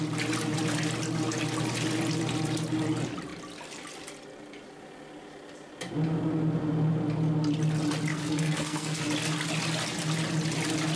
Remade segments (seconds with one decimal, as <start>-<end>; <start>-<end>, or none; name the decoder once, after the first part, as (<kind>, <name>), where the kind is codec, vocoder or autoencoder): 8.1-9.0 (codec, SNAC)